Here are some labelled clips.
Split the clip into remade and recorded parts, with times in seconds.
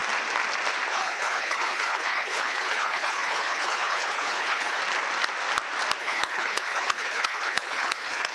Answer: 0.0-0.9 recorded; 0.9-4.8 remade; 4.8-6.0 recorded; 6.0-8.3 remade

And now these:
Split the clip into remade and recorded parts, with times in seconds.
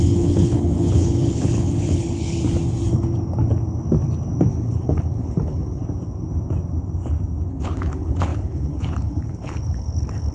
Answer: 0.0-2.4 remade; 2.4-4.5 recorded; 4.5-5.8 remade; 5.8-7.5 recorded; 7.5-10.3 remade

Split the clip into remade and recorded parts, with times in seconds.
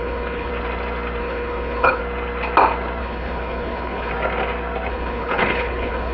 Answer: 0.0-0.5 remade; 0.5-1.2 recorded; 1.2-2.0 remade; 2.0-3.0 recorded; 3.0-4.1 remade; 4.1-4.9 recorded; 4.9-6.1 remade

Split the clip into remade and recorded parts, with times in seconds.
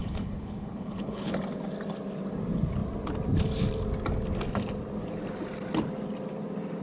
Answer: 0.0-1.3 remade; 1.3-6.8 recorded